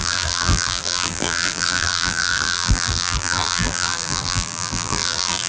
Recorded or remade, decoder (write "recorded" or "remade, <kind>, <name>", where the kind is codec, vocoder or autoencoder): remade, vocoder, BigVGAN v2